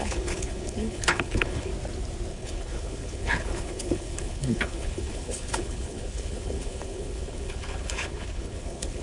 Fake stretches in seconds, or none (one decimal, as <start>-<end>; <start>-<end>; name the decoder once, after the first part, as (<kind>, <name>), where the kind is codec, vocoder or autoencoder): 0.0-1.7 (codec, HILCodec); 2.3-9.0